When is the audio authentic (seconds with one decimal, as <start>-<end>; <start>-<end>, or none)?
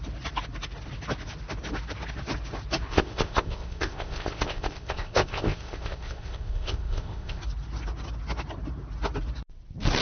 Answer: 0.0-2.9; 7.4-10.0